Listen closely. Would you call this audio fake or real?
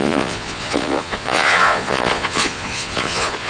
fake